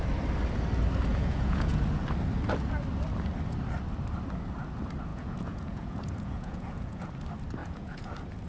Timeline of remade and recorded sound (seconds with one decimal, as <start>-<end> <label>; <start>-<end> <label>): 0.0-1.1 recorded; 1.1-1.8 remade; 1.8-5.1 recorded; 5.1-7.1 remade; 7.1-7.6 recorded; 7.6-8.1 remade; 8.1-8.5 recorded